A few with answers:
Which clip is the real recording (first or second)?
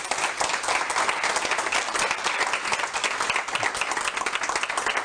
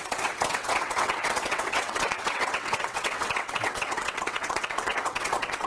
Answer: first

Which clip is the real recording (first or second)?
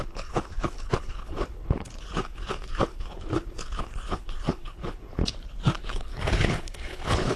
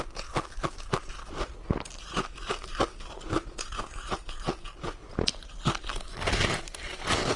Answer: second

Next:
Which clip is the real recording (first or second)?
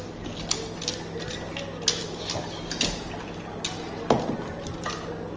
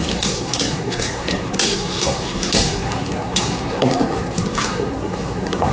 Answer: first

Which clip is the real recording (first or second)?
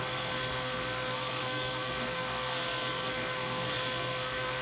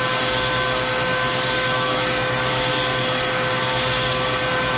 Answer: second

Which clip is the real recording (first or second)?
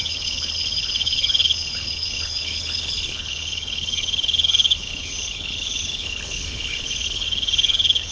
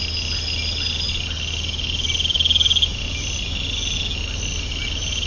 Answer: second